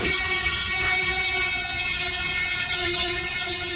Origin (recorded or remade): remade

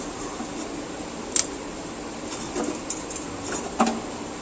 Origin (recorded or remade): recorded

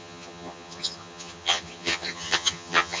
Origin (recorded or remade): remade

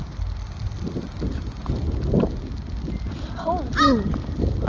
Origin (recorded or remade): recorded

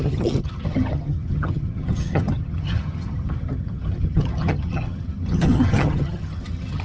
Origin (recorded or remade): remade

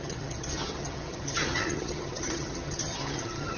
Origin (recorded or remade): remade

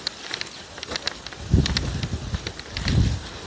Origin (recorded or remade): recorded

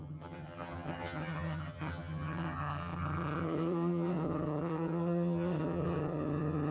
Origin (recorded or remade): remade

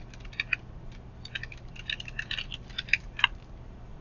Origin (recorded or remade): recorded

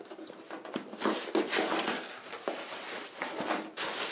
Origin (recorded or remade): recorded